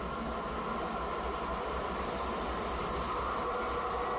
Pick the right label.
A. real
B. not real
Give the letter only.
A